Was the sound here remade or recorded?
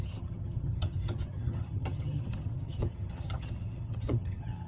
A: remade